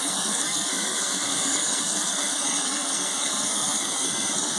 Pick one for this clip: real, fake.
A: fake